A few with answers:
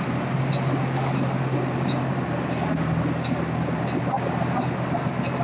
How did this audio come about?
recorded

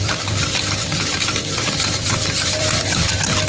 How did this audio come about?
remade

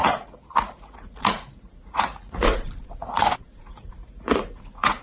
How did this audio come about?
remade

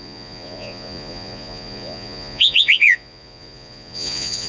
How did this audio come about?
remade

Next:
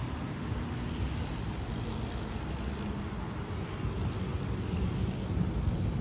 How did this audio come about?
recorded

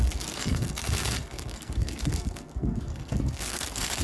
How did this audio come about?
remade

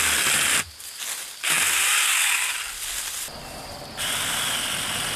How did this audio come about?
recorded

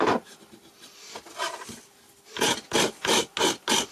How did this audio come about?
recorded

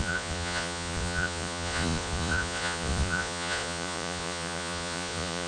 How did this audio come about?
remade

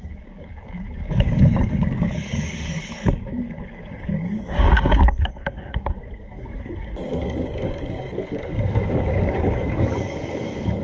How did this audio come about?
remade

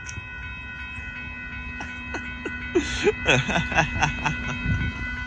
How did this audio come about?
recorded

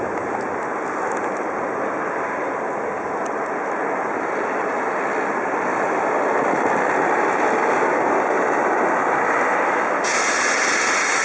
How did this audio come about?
recorded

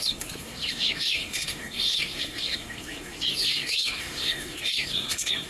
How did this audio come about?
remade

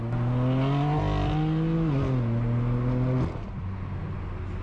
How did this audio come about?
recorded